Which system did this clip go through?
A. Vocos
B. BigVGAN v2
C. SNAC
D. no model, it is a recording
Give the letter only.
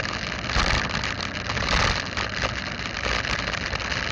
D